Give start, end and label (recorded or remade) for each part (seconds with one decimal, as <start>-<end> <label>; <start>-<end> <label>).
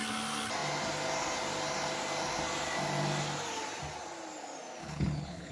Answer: 0.0-4.8 recorded; 4.8-5.5 remade